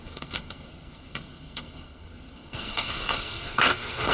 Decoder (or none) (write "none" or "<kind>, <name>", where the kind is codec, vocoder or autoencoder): codec, SNAC